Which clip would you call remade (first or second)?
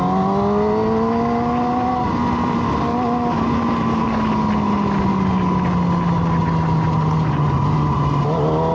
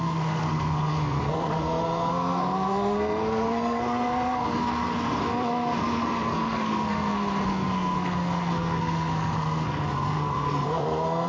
second